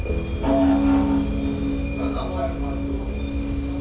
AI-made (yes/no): no